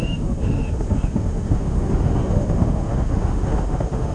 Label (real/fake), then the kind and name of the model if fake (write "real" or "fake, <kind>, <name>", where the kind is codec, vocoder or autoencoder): fake, autoencoder, DAC-VAE